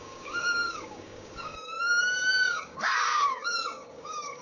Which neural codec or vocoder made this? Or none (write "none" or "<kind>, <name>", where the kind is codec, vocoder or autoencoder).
codec, DAC